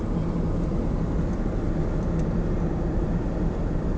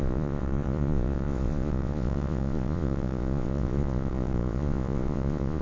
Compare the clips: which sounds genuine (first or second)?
first